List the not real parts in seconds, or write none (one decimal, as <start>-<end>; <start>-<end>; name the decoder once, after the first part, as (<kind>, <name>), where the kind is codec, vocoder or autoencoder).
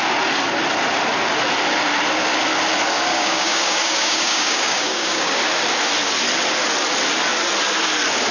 3.1-5.4 (codec, DAC)